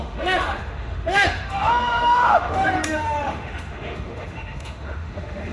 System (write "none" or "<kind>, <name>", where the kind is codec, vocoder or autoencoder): autoencoder, DAC-VAE